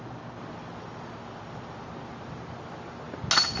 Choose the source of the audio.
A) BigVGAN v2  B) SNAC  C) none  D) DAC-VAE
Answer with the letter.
C